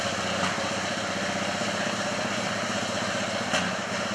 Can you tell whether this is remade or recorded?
recorded